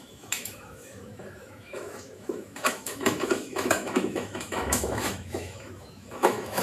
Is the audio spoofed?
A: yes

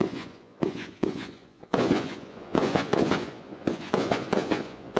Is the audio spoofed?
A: yes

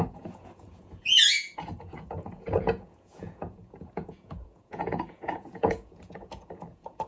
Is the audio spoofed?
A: yes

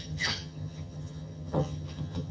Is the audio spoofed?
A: yes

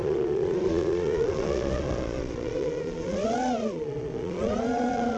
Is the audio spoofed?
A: yes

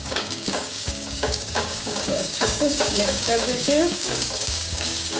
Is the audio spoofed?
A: yes